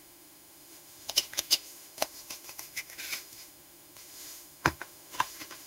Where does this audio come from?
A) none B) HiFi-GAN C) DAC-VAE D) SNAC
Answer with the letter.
C